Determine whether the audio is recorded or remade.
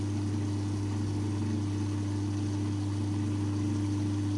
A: recorded